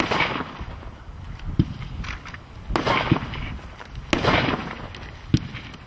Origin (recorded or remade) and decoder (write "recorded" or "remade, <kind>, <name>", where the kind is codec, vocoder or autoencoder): recorded